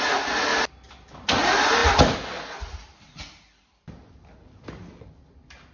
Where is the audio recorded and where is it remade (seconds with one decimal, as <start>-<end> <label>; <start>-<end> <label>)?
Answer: 0.0-1.8 recorded; 1.8-5.2 remade; 5.2-5.7 recorded